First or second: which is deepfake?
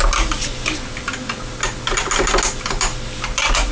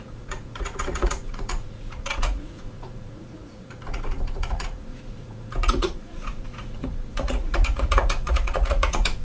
second